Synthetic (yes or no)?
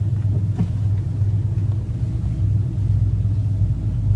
no